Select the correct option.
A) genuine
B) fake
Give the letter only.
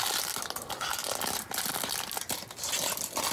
A